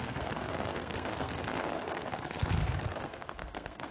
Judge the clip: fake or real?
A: fake